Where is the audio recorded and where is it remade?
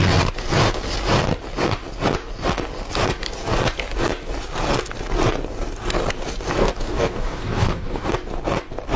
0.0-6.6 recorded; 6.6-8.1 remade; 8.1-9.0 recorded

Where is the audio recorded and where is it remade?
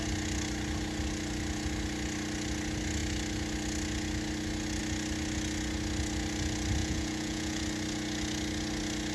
0.0-6.8 recorded; 6.8-7.6 remade; 7.6-9.1 recorded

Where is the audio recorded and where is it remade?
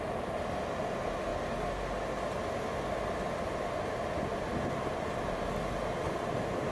0.0-6.7 recorded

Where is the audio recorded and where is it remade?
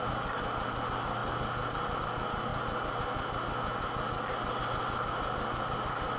0.0-6.2 recorded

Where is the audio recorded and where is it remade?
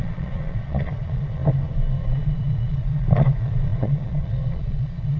0.0-1.4 remade; 1.4-2.0 recorded; 2.0-5.2 remade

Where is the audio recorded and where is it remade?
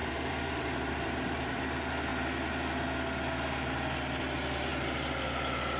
0.0-1.6 remade; 1.6-5.8 recorded